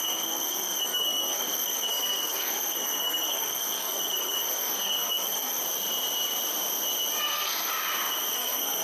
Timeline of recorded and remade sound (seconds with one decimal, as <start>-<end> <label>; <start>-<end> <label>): 0.0-5.6 remade; 5.6-7.2 recorded; 7.2-7.7 remade; 7.7-8.3 recorded; 8.3-8.8 remade